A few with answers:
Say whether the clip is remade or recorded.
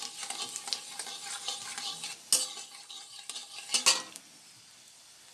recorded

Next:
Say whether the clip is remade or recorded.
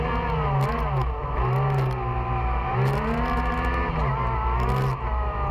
recorded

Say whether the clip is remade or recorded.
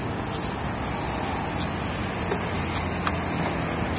recorded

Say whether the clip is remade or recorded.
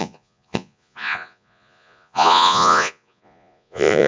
remade